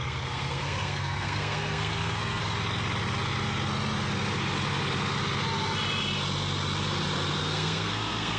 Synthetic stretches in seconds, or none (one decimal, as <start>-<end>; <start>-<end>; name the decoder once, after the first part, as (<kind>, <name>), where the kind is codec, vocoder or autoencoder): 0.0-2.4 (codec, SNAC); 7.4-8.4